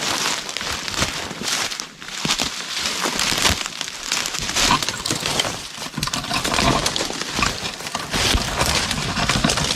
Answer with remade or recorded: remade